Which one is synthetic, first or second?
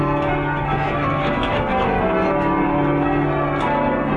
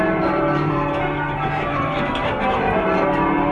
second